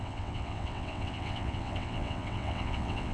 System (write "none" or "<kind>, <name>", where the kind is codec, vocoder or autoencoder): vocoder, WaveNeXt